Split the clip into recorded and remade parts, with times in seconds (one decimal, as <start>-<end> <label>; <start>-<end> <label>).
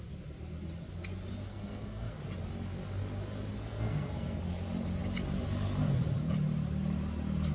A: 0.0-1.5 recorded; 1.5-2.2 remade; 2.2-3.5 recorded; 3.5-4.4 remade; 4.4-7.5 recorded